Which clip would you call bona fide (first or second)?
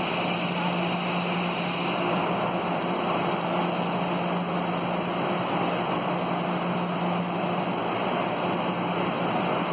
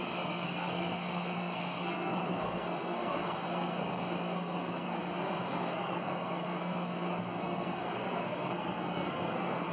first